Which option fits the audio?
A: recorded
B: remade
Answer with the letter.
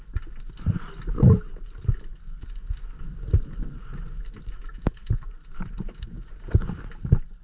A